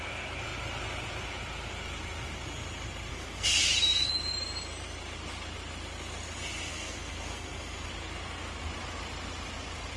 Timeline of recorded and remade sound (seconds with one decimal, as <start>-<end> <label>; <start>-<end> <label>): 0.0-3.1 recorded; 3.1-3.6 remade; 3.6-6.7 recorded; 6.7-7.9 remade; 7.9-10.0 recorded